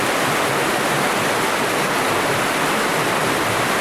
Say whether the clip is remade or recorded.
recorded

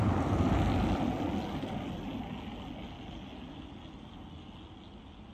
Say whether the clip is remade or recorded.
recorded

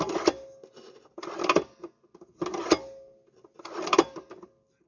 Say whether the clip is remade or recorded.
recorded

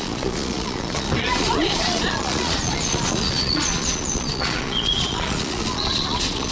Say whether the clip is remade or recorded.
remade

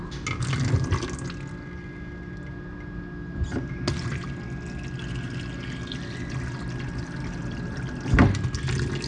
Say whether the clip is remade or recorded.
recorded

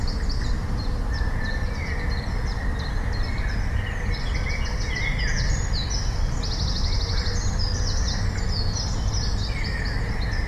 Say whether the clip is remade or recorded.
recorded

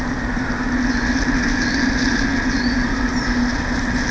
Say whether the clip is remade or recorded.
recorded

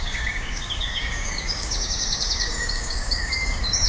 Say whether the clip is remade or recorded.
remade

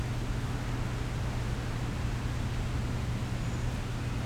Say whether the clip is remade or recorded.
recorded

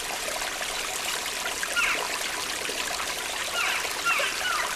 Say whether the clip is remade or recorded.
remade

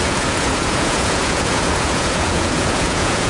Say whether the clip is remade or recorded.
remade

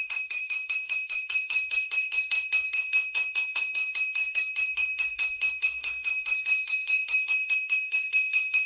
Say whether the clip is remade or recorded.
remade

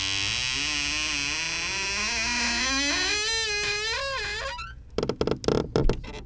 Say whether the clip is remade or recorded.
recorded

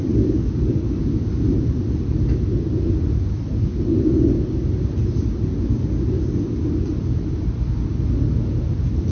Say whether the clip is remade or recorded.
recorded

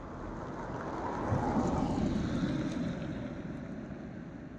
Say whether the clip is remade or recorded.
recorded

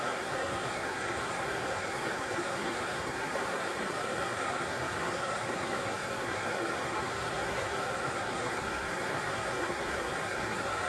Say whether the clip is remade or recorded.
remade